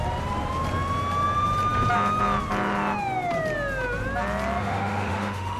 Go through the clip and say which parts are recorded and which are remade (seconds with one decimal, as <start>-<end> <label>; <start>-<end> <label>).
0.0-4.6 recorded; 4.6-5.6 remade